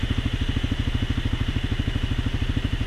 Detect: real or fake real